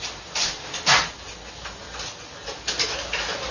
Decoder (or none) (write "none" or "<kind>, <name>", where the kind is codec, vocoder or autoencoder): none